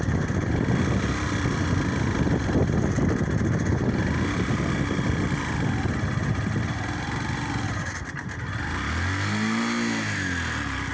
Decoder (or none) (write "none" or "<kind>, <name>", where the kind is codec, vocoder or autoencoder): none